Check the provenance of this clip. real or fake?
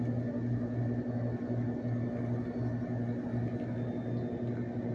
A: real